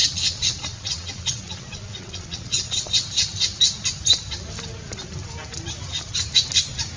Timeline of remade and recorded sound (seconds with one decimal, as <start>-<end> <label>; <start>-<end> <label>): 0.0-2.9 remade; 2.9-7.0 recorded